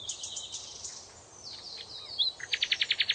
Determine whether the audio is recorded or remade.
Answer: recorded